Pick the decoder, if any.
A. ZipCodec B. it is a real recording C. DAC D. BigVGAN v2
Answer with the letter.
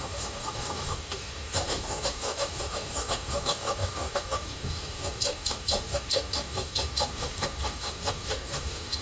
C